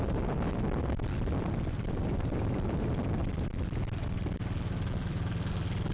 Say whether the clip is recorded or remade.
remade